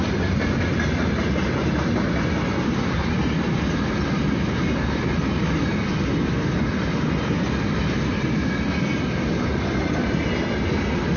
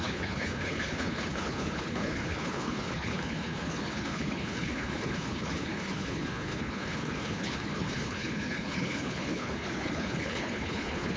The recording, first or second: first